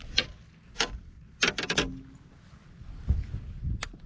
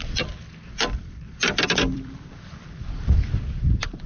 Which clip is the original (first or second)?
first